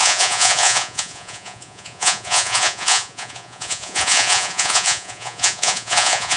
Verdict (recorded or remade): remade